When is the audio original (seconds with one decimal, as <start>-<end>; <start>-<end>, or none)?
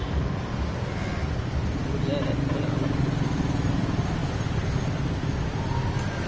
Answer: 0.0-6.3